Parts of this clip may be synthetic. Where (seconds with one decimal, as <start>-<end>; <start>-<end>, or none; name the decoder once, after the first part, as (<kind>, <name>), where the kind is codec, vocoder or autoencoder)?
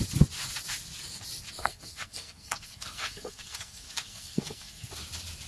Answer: 1.6-4.9 (codec, SNAC)